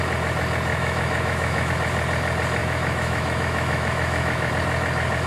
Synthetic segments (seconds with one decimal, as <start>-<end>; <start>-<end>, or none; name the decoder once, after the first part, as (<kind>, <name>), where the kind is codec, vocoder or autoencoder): 0.7-1.7 (autoencoder, DAC-VAE); 2.6-4.5